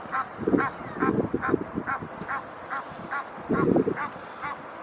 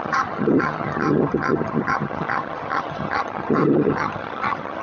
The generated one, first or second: second